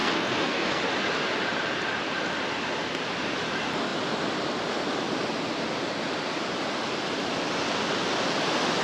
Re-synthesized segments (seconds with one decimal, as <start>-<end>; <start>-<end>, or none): 0.0-0.8